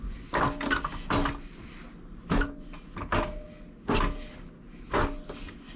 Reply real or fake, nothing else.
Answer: real